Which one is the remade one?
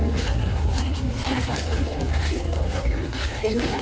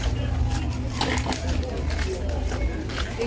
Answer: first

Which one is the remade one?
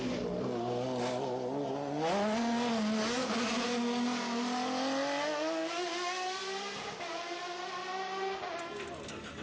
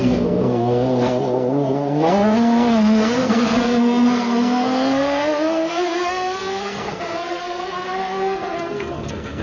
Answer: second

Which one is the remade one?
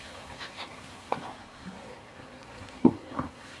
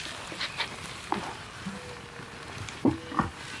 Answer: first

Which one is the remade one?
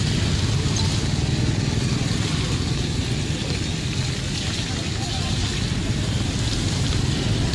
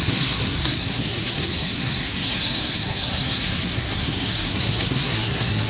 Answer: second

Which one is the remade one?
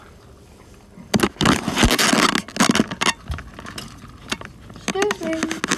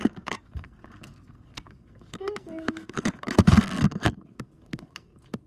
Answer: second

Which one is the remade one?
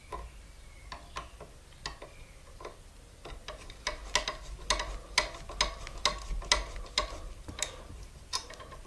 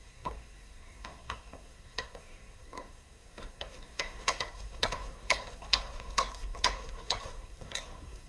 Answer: second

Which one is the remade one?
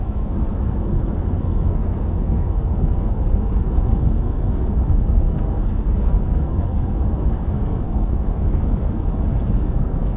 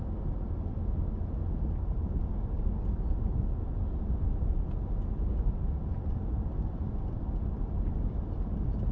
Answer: first